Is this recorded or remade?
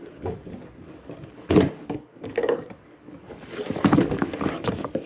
remade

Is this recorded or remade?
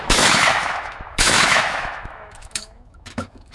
remade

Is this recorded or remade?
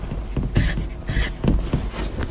recorded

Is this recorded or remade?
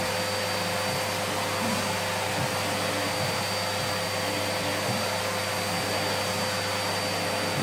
recorded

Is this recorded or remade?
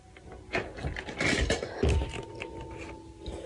recorded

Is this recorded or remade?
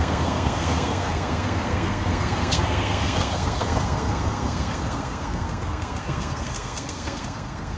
remade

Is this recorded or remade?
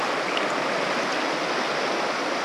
recorded